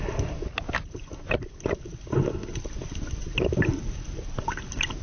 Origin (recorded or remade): recorded